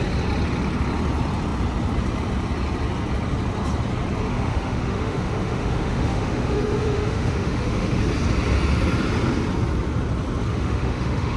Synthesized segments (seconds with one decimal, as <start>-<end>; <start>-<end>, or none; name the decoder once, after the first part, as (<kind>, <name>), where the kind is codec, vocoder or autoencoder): 4.3-8.0 (autoencoder, DAC-VAE); 10.5-11.4